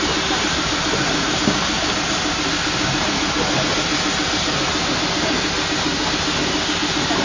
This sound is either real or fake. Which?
real